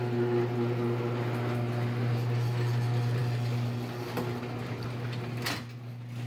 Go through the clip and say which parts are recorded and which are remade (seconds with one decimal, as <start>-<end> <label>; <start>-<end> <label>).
0.0-6.3 recorded